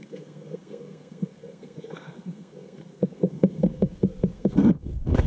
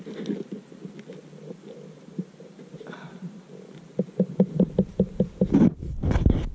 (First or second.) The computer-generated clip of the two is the first